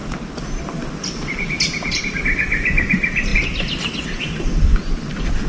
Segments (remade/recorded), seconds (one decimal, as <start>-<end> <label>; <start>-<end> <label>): 0.0-5.5 recorded